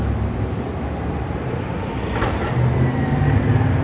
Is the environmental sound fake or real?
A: real